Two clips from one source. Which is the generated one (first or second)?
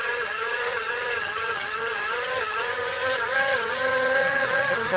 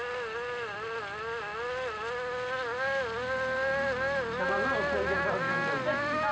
first